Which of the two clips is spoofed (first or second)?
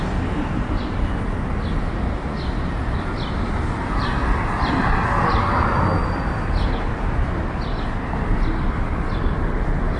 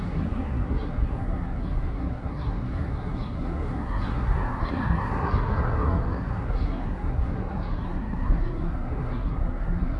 second